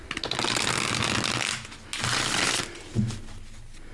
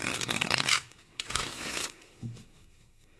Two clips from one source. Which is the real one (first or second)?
first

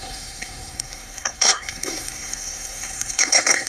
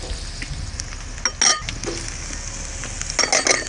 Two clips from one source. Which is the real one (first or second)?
second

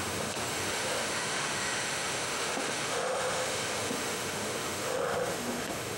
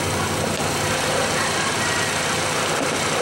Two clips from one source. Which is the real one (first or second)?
second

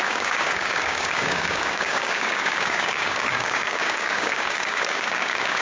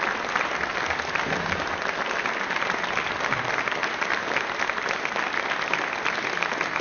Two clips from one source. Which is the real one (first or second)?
second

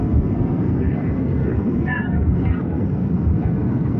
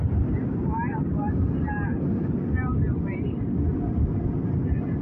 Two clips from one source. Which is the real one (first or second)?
second